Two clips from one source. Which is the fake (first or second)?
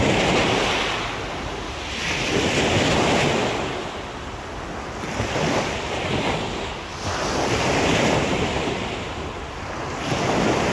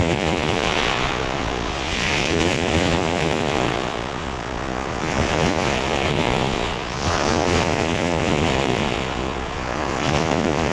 second